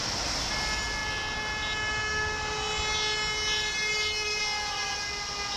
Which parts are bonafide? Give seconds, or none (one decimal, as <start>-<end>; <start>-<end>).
0.0-5.6